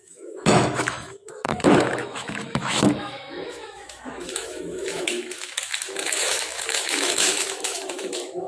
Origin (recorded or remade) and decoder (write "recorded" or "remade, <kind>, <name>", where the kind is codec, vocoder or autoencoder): remade, autoencoder, DAC-VAE